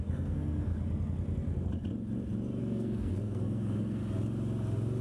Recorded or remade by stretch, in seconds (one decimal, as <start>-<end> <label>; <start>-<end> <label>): 0.0-0.7 remade; 0.7-2.6 recorded; 2.6-4.0 remade; 4.0-5.0 recorded